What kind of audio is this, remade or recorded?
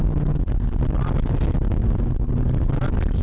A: recorded